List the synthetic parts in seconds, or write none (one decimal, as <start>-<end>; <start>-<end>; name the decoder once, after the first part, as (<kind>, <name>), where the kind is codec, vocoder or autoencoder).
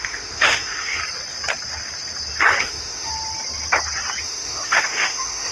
0.0-1.0 (autoencoder, DAC-VAE); 2.6-3.1; 4.2-5.5